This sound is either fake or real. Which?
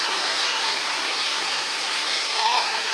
fake